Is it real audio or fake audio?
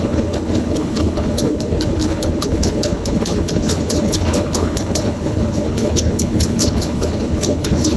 fake